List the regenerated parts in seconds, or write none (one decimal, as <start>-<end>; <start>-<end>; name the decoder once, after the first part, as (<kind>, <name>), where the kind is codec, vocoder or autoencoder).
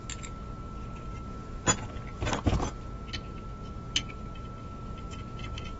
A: none